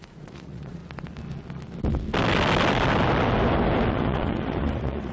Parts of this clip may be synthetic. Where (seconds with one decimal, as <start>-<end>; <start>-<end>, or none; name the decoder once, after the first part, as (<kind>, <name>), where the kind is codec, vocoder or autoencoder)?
0.0-0.8 (vocoder, Vocos); 3.9-5.1